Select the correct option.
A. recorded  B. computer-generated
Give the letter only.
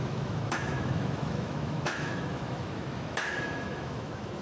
B